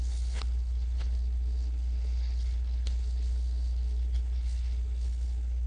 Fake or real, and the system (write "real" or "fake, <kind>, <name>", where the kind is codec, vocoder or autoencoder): fake, codec, HILCodec